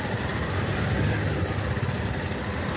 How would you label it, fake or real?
real